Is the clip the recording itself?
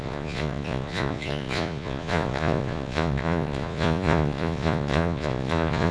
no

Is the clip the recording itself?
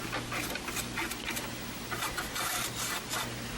yes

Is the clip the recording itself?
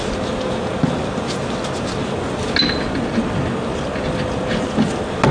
yes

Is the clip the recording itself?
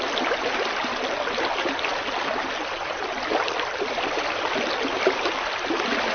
yes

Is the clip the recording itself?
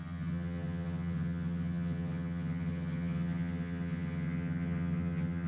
no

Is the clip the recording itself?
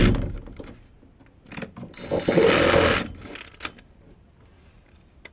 yes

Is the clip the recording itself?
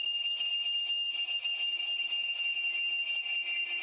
yes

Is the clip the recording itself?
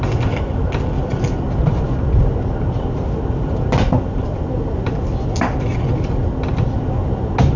yes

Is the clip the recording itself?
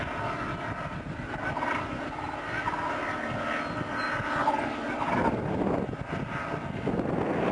yes